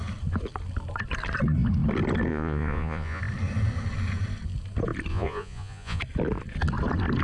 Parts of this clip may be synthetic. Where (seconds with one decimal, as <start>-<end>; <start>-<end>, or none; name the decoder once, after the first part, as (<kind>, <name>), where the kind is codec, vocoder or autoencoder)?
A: 2.3-3.2 (vocoder, Vocos); 5.1-6.0